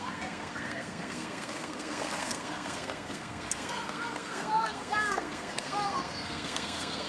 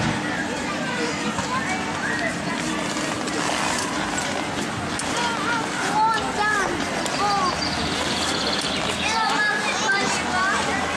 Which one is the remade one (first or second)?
first